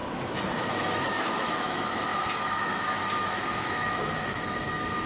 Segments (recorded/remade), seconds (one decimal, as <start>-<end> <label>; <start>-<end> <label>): 0.0-0.6 recorded; 0.6-5.1 remade